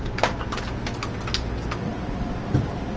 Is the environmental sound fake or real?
real